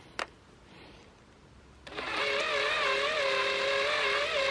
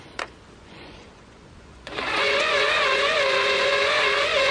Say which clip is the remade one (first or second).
second